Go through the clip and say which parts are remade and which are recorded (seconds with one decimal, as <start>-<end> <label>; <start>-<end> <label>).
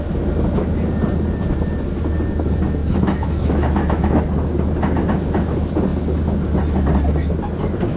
0.0-2.8 recorded; 2.8-4.2 remade; 4.2-8.0 recorded